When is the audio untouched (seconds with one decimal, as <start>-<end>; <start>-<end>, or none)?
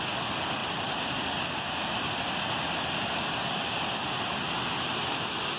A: 0.0-5.6